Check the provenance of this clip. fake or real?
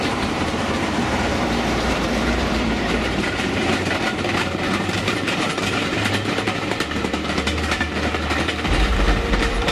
fake